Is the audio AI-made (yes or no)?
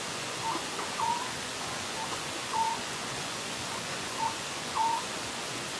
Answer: yes